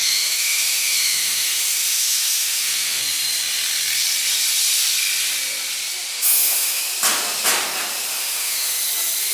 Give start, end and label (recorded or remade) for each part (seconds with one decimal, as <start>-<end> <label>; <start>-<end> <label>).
0.0-3.0 remade; 3.0-6.1 recorded; 6.1-6.8 remade; 6.8-8.2 recorded; 8.2-8.8 remade; 8.8-9.3 recorded